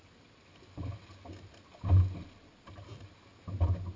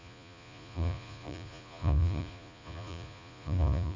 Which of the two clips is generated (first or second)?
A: second